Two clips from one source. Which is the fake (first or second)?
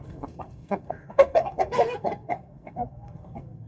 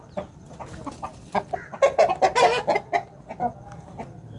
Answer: first